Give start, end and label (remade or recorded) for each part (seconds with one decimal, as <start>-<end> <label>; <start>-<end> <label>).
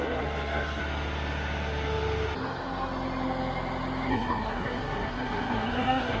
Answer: 0.0-0.8 remade; 0.8-4.1 recorded; 4.1-6.2 remade